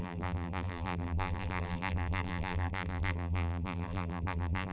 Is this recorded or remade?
remade